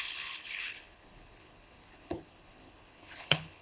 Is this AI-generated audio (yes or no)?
yes